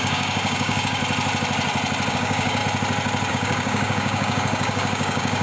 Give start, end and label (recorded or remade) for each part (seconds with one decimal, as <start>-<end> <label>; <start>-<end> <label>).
0.0-1.0 remade; 1.0-2.1 recorded; 2.1-2.6 remade; 2.6-3.3 recorded; 3.3-5.4 remade

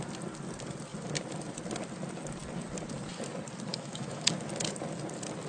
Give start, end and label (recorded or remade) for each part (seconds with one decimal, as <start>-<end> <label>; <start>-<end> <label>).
0.0-3.7 recorded; 3.7-4.3 remade; 4.3-5.5 recorded

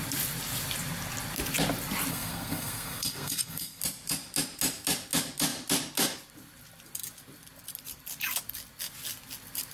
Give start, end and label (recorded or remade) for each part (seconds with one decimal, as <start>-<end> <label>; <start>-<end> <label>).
0.0-2.1 recorded; 2.1-3.8 remade; 3.8-9.7 recorded

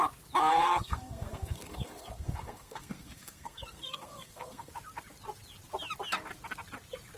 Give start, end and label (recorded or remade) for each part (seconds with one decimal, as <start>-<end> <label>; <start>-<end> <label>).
0.0-0.5 recorded; 0.5-4.7 remade; 4.7-7.2 recorded

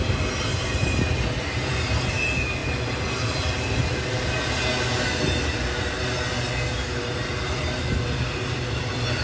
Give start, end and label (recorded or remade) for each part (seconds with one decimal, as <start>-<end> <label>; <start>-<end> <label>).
0.0-9.2 recorded